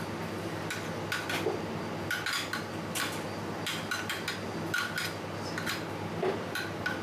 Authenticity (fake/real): real